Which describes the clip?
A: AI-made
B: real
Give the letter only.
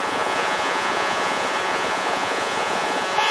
A